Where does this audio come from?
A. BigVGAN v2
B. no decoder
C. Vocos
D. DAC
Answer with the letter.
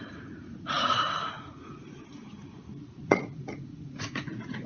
C